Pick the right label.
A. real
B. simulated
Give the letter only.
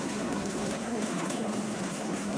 B